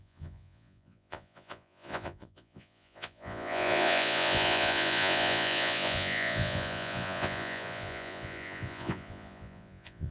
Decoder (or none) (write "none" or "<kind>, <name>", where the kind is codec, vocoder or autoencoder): vocoder, Vocos